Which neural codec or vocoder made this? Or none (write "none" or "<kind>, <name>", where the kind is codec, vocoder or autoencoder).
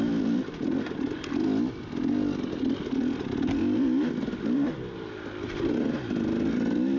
none